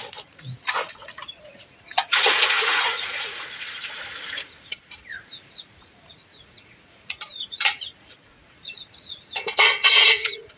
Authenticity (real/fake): fake